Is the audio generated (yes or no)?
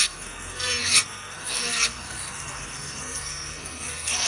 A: yes